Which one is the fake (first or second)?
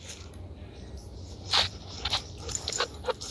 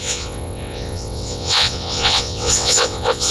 second